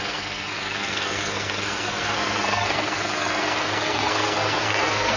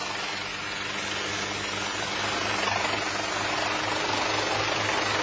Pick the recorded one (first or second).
second